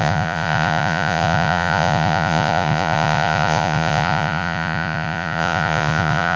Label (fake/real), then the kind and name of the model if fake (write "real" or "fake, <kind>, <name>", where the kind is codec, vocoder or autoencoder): fake, vocoder, Vocos